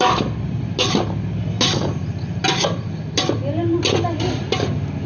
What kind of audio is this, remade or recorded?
recorded